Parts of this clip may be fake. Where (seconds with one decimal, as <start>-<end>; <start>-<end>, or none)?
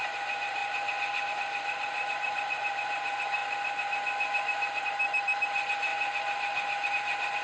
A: 0.0-0.6; 1.3-3.4; 4.8-5.9; 6.9-7.4